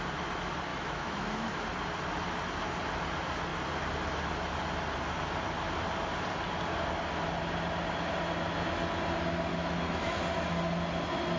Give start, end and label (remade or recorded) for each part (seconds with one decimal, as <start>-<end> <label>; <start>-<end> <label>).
0.0-0.7 recorded; 0.7-1.6 remade; 1.6-9.5 recorded; 9.5-10.1 remade; 10.1-11.4 recorded